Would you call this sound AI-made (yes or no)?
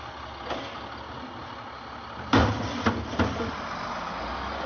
no